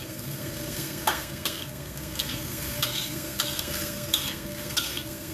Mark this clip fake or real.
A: fake